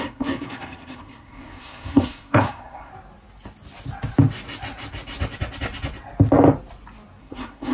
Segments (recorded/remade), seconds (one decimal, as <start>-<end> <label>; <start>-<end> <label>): 0.0-2.9 remade; 2.9-7.2 recorded; 7.2-7.7 remade